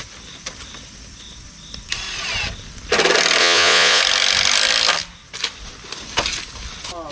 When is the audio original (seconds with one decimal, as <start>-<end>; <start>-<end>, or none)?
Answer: 0.0-3.4; 4.0-7.1